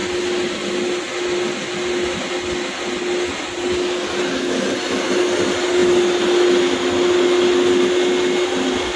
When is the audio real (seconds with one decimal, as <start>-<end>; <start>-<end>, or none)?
0.0-9.0